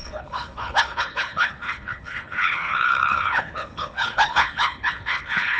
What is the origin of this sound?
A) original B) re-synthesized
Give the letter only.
B